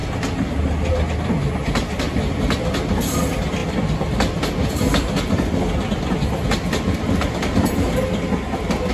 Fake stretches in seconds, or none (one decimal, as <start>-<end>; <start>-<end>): none